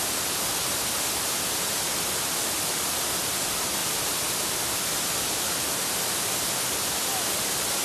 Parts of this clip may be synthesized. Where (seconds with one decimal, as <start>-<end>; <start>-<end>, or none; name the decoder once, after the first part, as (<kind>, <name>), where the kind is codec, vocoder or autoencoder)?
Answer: 3.8-7.8 (vocoder, BigVGAN v2)